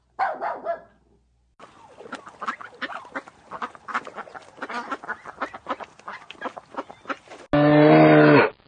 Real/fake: real